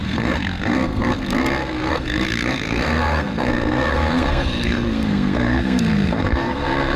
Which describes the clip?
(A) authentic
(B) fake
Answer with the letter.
B